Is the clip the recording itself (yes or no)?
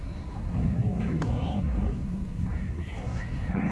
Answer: no